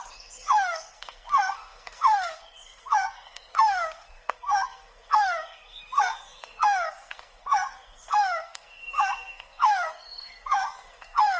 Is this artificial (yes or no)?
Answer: yes